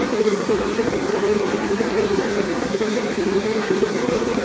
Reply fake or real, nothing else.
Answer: fake